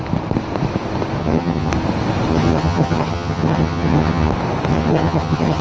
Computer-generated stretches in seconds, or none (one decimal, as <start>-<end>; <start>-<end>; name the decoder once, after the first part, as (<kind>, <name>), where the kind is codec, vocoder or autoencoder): 1.2-1.7 (vocoder, HiFi-GAN); 2.3-4.3; 4.7-5.6